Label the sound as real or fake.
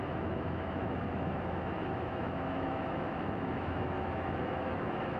fake